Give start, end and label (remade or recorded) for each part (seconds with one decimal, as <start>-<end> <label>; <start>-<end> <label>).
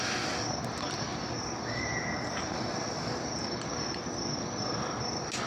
0.0-5.5 recorded